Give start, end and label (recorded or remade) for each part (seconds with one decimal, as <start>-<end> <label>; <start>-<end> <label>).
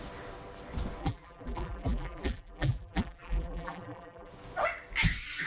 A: 0.0-1.0 recorded; 1.0-4.3 remade; 4.3-5.5 recorded